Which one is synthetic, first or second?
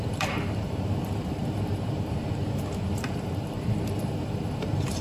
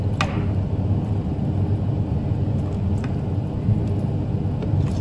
first